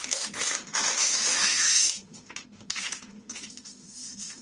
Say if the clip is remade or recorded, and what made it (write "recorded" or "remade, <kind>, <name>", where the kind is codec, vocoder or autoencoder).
remade, autoencoder, DAC-VAE